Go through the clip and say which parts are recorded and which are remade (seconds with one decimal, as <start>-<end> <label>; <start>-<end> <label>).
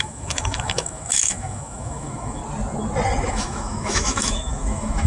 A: 0.0-2.4 remade; 2.4-3.3 recorded; 3.3-5.1 remade